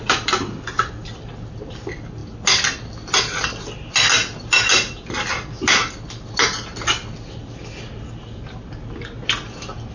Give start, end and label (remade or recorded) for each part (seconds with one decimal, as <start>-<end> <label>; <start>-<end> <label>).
0.0-9.9 recorded